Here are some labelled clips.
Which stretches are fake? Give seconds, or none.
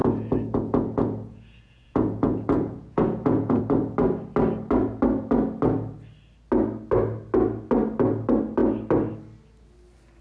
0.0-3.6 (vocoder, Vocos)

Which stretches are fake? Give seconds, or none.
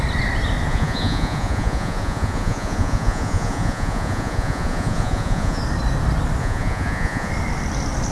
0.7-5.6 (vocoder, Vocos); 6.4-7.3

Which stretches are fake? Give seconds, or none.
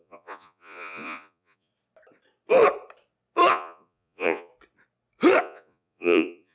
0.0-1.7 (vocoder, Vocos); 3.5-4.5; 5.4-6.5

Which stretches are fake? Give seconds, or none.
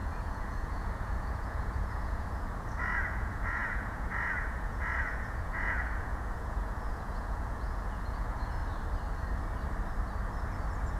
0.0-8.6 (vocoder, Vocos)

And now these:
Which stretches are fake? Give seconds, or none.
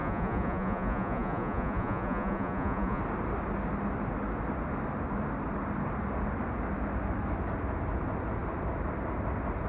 0.0-3.0 (vocoder, Vocos)